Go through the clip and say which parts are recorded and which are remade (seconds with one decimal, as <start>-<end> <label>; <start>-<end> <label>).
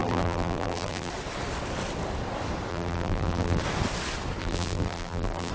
0.0-1.1 remade; 1.1-2.7 recorded; 2.7-3.6 remade; 3.6-4.4 recorded; 4.4-5.5 remade